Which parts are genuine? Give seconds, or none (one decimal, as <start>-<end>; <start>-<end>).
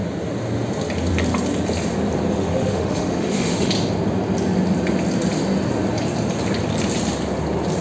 0.0-2.3; 3.7-7.8